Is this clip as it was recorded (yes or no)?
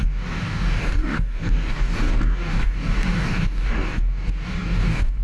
no